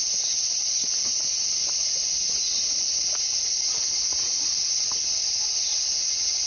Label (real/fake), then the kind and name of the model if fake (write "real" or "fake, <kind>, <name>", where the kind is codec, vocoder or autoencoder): real